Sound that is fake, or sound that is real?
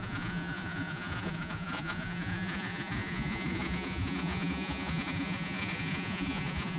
fake